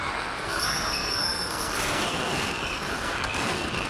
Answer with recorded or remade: remade